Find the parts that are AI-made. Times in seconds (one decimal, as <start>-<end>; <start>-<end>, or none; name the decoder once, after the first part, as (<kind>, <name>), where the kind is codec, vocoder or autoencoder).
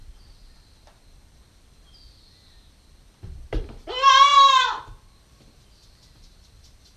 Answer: 3.9-4.3 (vocoder, BigVGAN v2); 5.2-7.0